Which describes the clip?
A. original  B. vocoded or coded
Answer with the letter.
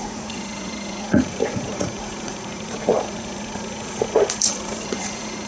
B